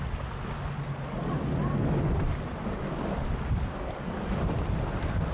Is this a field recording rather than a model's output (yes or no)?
yes